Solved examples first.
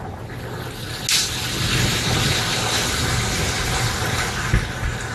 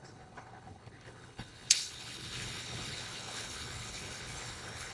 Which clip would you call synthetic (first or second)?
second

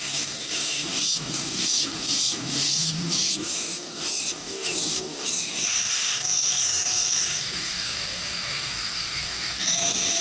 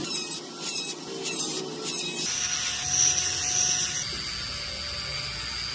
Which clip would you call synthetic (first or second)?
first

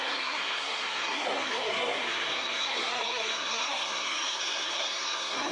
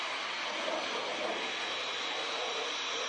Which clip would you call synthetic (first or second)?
first